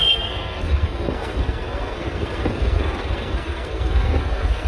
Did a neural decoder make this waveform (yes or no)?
yes